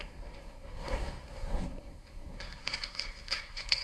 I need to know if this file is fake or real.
fake